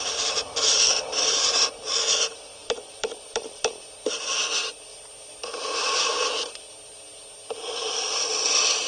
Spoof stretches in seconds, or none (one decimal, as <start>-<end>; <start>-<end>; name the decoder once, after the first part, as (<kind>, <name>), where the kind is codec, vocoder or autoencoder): 2.5-3.6 (vocoder, BigVGAN v2)